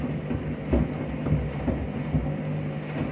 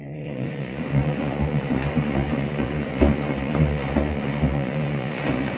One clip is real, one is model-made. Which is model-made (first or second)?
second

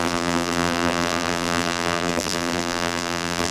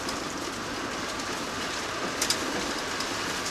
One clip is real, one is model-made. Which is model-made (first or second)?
first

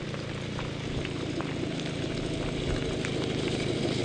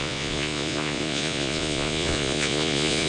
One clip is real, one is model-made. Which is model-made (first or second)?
second